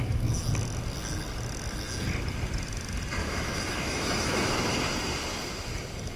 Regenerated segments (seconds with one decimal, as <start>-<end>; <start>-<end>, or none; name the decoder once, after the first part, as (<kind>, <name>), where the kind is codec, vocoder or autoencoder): 3.2-4.8 (autoencoder, DAC-VAE)